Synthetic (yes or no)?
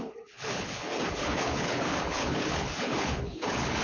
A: yes